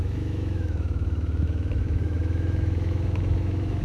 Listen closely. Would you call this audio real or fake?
fake